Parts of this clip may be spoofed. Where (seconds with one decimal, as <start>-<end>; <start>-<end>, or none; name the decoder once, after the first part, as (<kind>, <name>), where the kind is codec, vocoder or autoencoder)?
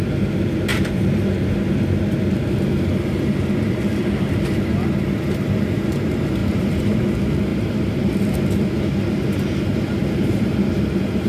0.7-1.3 (vocoder, BigVGAN v2); 6.4-7.1; 7.5-8.1; 10.0-10.6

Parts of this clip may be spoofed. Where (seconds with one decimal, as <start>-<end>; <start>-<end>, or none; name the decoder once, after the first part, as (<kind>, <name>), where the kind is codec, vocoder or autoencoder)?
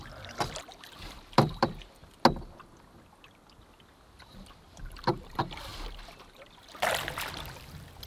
0.0-2.0 (vocoder, BigVGAN v2); 4.6-5.7; 6.3-8.1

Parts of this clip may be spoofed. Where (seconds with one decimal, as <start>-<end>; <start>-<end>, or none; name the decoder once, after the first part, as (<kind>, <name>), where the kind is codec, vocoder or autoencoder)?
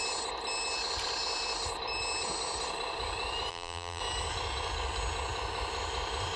3.5-4.0 (vocoder, BigVGAN v2)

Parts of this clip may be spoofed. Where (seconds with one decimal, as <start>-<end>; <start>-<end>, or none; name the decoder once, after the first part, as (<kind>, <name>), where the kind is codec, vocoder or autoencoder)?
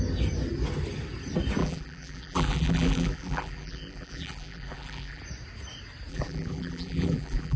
1.6-5.2 (vocoder, BigVGAN v2); 6.1-7.6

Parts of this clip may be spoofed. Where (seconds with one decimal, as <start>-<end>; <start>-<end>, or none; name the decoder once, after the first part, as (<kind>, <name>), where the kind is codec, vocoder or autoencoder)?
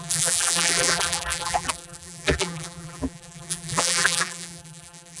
0.0-5.2 (vocoder, BigVGAN v2)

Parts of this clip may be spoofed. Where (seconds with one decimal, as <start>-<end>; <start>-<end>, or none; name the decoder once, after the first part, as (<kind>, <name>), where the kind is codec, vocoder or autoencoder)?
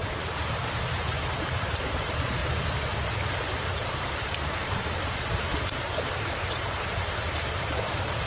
0.0-2.4 (vocoder, BigVGAN v2); 3.6-8.3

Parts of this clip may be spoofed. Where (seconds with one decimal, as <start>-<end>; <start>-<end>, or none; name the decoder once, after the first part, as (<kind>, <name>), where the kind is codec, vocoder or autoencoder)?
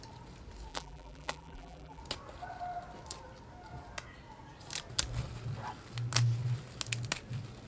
0.7-2.0 (vocoder, BigVGAN v2)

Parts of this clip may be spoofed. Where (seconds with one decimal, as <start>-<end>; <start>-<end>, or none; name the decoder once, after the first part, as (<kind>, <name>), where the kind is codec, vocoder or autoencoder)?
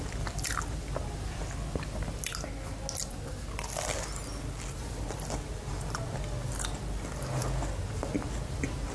none